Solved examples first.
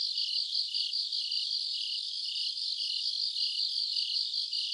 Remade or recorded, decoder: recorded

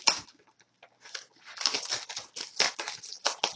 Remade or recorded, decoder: recorded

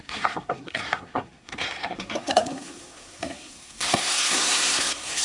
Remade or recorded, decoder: remade, codec, SNAC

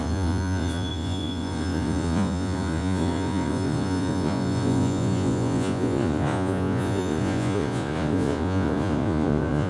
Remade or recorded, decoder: remade, vocoder, Vocos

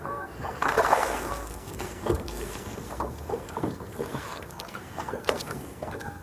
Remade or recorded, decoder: remade, codec, SNAC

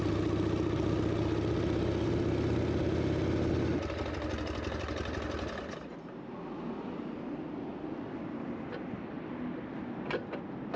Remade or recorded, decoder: recorded